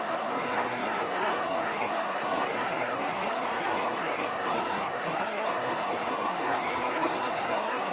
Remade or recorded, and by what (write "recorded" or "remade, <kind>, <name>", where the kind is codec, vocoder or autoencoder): remade, codec, SNAC